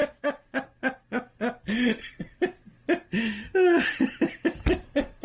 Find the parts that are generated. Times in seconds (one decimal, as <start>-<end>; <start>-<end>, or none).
none